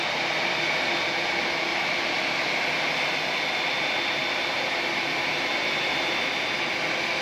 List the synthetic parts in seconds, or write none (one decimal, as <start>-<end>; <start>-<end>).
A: 1.7-2.5